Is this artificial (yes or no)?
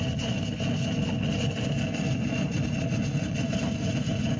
no